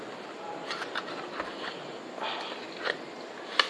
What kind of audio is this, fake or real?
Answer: real